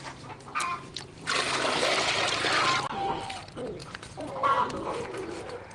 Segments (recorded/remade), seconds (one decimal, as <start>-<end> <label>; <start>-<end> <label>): 0.0-3.8 recorded; 3.8-4.3 remade; 4.3-5.7 recorded

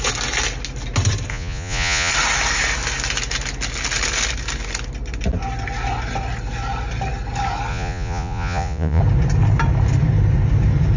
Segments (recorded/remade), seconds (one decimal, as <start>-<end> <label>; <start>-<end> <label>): 0.0-1.3 recorded; 1.3-2.1 remade; 2.1-7.7 recorded; 7.7-9.0 remade; 9.0-11.0 recorded

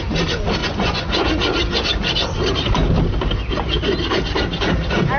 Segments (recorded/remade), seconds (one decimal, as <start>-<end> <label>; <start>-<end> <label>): 0.0-0.6 recorded; 0.6-1.3 remade; 1.3-5.2 recorded

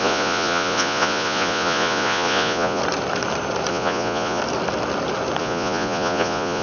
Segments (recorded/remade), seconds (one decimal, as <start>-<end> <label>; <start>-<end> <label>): 0.0-2.8 remade; 2.8-3.7 recorded; 3.7-4.4 remade; 4.4-5.4 recorded; 5.4-6.6 remade

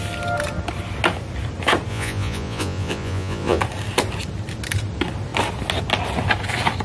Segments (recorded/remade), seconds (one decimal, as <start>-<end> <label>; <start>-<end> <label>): 0.0-1.9 recorded; 1.9-3.6 remade; 3.6-6.8 recorded

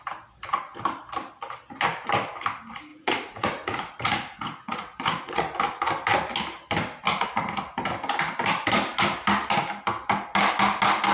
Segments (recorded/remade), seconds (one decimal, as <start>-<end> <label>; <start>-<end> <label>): 0.0-2.9 recorded; 2.9-5.4 remade; 5.4-11.1 recorded